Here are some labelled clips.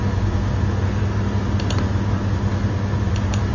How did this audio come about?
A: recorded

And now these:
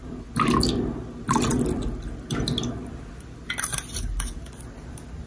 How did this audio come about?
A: recorded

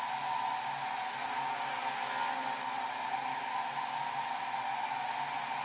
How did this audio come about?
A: recorded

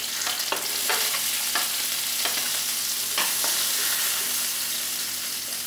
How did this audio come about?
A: recorded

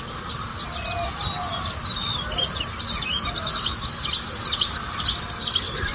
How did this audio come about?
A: recorded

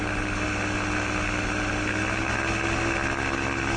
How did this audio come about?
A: recorded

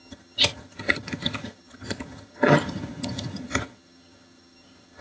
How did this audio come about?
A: remade